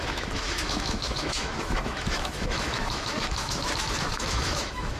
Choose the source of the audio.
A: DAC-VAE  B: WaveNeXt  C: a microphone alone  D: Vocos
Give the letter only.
A